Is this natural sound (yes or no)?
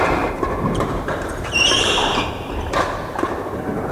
no